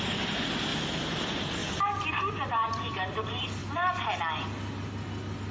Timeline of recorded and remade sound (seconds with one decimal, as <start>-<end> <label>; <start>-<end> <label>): 0.0-0.7 remade; 0.7-1.2 recorded; 1.2-3.6 remade; 3.6-4.3 recorded; 4.3-5.5 remade